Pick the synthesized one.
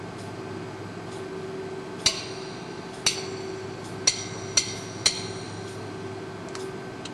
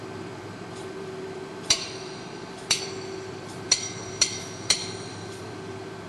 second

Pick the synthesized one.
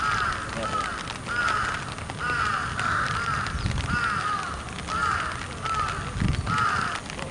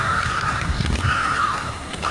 second